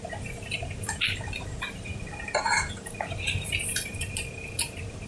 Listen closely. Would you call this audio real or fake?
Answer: fake